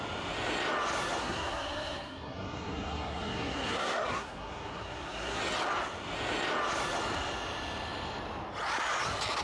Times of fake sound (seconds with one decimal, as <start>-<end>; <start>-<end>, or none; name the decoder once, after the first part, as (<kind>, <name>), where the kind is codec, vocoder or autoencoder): 1.2-5.4 (codec, SNAC)